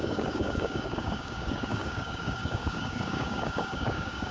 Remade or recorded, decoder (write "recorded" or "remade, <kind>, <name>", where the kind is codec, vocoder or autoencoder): remade, codec, DAC